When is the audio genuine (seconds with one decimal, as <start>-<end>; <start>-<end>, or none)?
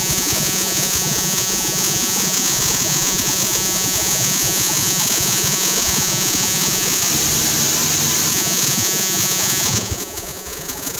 7.1-8.3